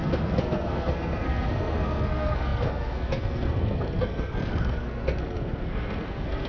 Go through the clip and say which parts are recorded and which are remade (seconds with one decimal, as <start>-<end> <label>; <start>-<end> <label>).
0.0-6.5 remade